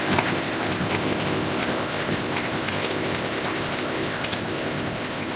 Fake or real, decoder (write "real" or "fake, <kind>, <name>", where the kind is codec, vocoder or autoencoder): fake, codec, ZipCodec